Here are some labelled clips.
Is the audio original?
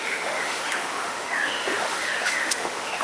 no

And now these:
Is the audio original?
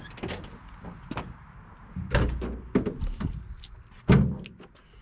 yes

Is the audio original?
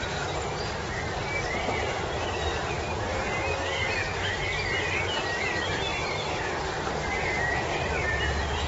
yes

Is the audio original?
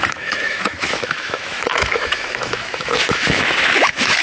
no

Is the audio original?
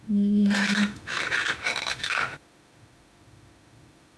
no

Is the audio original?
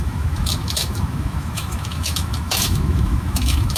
no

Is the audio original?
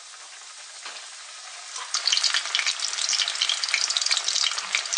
yes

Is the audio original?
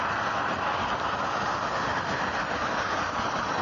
yes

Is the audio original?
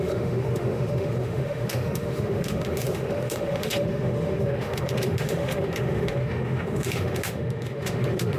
no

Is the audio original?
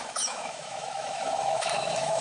no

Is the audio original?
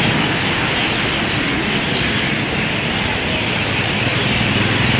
yes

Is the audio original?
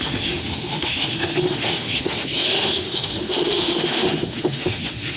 no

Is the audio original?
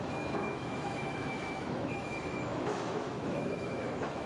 no